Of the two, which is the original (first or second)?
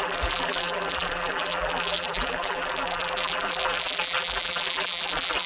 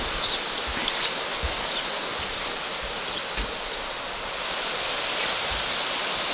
second